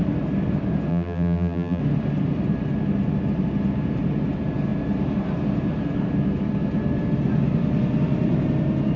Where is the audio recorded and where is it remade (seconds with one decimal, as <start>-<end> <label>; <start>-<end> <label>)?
0.0-0.9 recorded; 0.9-1.8 remade; 1.8-9.0 recorded